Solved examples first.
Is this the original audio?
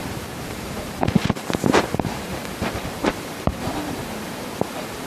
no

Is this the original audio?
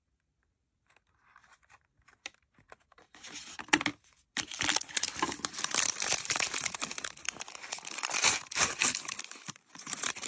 no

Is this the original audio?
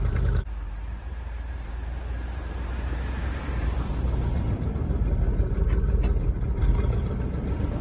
no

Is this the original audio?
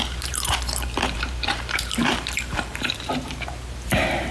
no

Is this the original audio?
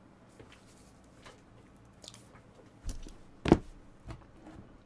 yes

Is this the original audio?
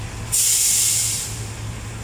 yes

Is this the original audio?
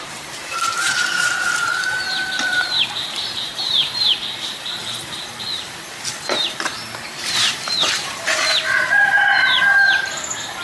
no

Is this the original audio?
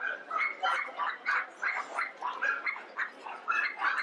yes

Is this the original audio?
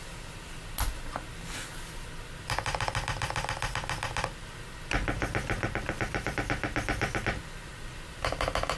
yes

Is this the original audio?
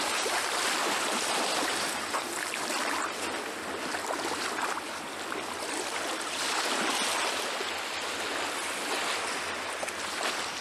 yes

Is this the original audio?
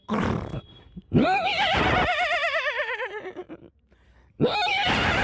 no